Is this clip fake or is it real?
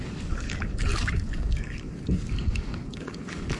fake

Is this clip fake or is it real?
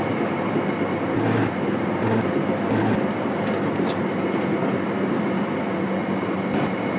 real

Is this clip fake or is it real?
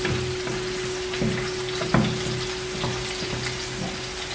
real